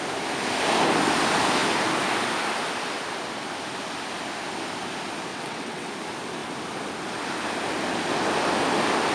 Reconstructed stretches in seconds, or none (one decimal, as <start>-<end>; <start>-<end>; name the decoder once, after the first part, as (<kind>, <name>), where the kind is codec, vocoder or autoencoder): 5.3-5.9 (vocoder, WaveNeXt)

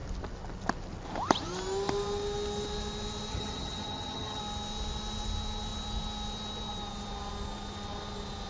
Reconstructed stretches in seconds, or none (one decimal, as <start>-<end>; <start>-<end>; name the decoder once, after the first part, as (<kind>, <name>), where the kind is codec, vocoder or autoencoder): 3.3-4.4 (vocoder, HiFi-GAN)

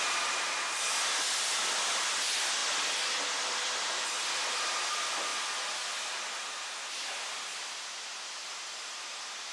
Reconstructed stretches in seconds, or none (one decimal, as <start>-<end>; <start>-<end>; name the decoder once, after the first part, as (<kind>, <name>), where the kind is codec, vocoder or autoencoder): none